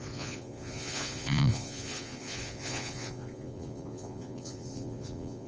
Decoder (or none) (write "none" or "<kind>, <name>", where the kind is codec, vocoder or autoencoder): vocoder, Vocos